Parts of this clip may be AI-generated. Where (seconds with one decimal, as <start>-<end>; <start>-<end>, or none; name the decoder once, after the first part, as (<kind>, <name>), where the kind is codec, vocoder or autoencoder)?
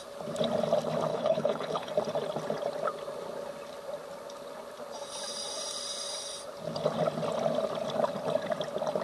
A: 1.1-1.9 (codec, HILCodec)